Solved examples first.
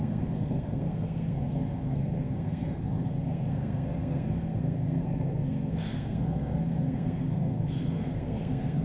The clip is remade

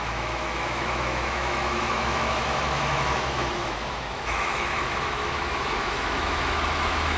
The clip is remade